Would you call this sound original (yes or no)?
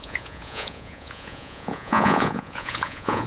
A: no